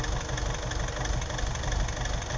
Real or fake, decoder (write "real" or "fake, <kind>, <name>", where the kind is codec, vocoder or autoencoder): real